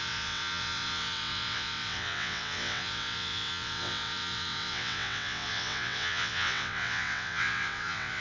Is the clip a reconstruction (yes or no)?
yes